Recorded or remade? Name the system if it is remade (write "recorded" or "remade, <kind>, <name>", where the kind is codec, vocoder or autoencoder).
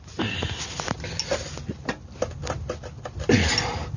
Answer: recorded